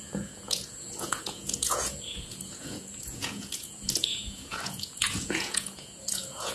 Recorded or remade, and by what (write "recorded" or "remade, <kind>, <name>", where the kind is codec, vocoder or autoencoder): remade, vocoder, Vocos